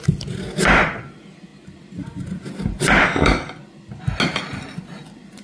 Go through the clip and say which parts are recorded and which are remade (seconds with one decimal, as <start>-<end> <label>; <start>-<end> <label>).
0.0-5.4 recorded